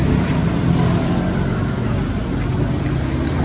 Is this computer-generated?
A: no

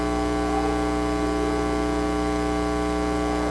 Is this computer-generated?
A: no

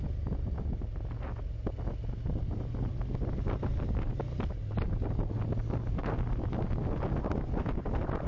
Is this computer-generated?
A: no